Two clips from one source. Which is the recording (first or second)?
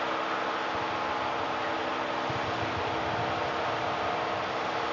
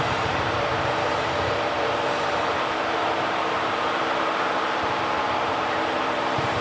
first